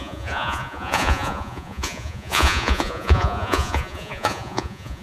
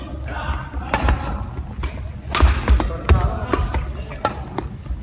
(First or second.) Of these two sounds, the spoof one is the first